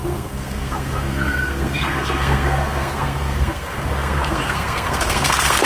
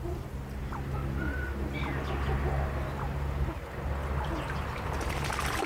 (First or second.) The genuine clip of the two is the second